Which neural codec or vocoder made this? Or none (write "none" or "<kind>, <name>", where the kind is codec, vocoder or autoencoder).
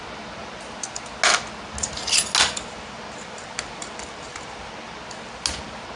none